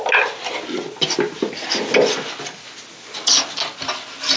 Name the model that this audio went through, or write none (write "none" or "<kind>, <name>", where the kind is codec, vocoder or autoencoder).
none